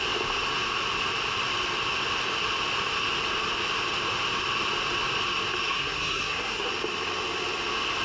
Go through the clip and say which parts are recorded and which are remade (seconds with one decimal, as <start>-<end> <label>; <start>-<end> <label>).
0.0-5.7 recorded; 5.7-6.7 remade; 6.7-8.0 recorded